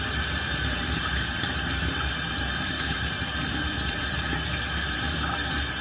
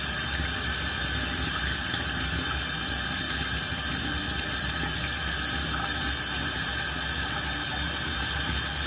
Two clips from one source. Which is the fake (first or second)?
first